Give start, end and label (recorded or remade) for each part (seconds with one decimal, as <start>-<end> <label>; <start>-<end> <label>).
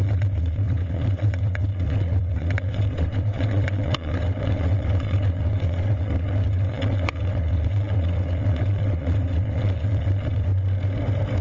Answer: 0.0-10.5 remade; 10.5-11.4 recorded